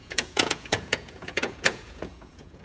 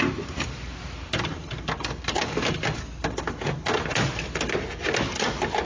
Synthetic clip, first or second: first